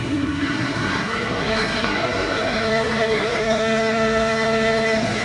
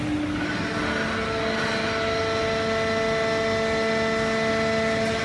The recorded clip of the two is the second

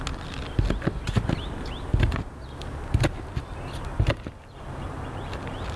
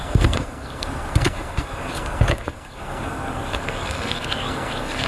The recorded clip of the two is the first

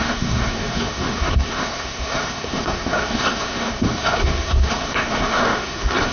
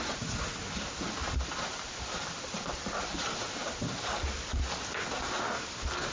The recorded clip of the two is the second